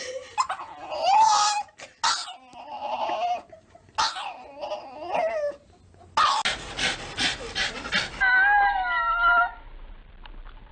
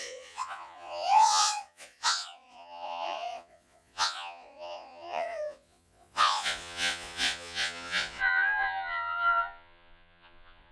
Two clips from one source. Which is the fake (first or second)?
second